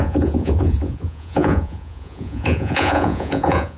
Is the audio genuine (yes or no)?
no